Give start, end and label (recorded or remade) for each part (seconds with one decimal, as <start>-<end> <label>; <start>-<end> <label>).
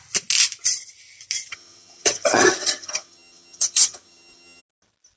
0.0-1.5 recorded; 1.5-4.6 remade; 4.6-5.2 recorded